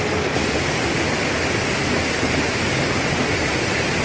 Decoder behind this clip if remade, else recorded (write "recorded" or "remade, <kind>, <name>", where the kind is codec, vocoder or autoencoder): recorded